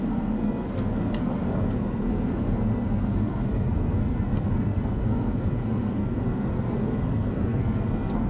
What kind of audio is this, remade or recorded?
remade